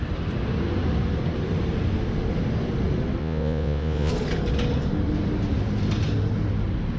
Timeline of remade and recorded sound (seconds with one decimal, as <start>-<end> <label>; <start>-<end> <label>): 0.0-3.2 recorded; 3.2-4.1 remade; 4.1-7.0 recorded

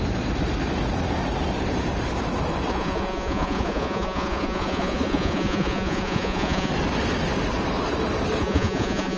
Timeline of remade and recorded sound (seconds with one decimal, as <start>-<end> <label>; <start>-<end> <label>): 0.0-2.7 recorded; 2.7-6.7 remade; 6.7-8.4 recorded; 8.4-9.2 remade

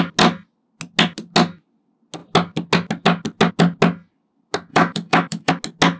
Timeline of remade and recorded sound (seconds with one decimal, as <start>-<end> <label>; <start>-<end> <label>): 0.0-4.7 recorded; 4.7-5.5 remade; 5.5-6.0 recorded

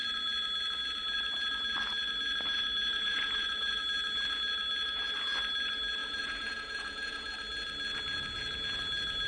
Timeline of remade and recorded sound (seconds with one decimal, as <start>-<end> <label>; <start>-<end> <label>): 0.0-2.9 recorded; 2.9-3.8 remade; 3.8-6.0 recorded; 6.0-7.3 remade; 7.3-9.3 recorded

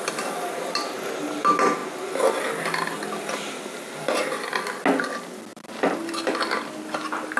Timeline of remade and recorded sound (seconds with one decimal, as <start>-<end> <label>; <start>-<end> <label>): 0.0-7.4 recorded

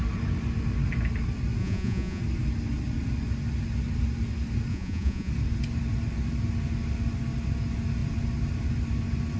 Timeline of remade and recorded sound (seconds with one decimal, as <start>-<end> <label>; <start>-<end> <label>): 0.0-1.6 recorded; 1.6-2.2 remade; 2.2-4.7 recorded; 4.7-5.3 remade; 5.3-9.4 recorded